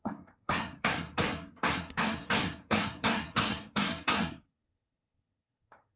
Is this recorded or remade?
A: remade